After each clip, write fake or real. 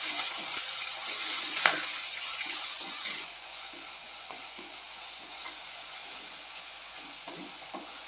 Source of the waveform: fake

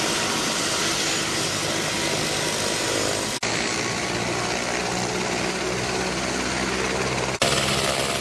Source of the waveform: real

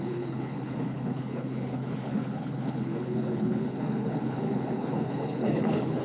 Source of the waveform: fake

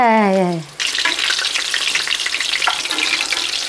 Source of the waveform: real